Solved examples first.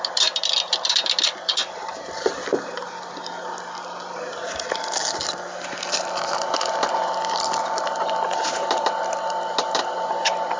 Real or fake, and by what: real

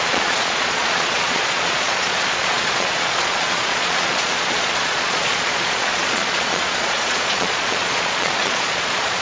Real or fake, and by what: fake, vocoder, Vocos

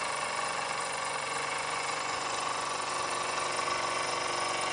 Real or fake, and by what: fake, vocoder, Vocos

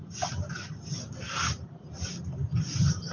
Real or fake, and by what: real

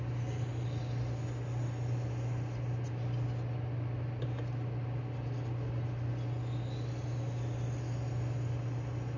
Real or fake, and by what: real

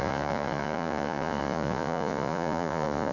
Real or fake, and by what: fake, vocoder, Vocos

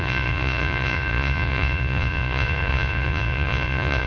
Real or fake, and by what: fake, vocoder, Vocos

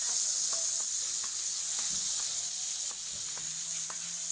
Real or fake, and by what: real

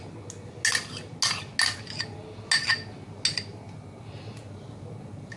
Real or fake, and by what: real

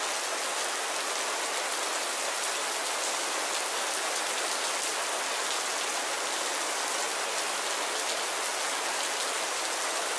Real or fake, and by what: real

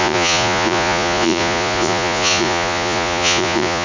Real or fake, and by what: fake, vocoder, Vocos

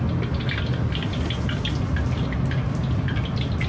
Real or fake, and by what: real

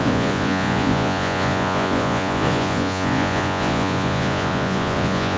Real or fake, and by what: fake, vocoder, Vocos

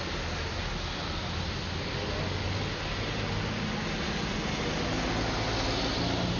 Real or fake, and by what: real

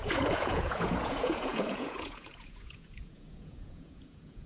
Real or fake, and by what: fake, vocoder, Vocos